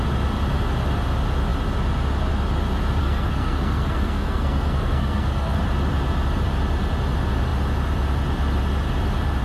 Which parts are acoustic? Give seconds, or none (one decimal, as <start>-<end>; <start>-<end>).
0.0-3.0; 5.6-9.4